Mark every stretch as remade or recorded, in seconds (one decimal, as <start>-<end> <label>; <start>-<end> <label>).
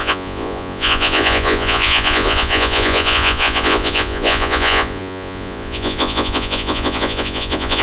0.0-7.8 remade